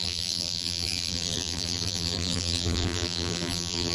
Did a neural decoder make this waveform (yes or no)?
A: yes